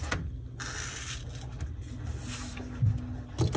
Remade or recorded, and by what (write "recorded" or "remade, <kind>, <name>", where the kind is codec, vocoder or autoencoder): recorded